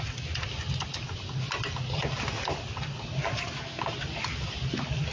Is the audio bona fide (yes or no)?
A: yes